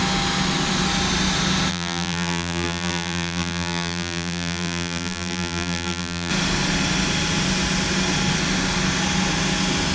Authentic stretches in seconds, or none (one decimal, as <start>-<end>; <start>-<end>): 0.0-1.7; 6.3-9.9